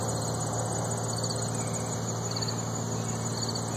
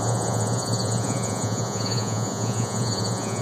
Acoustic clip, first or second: first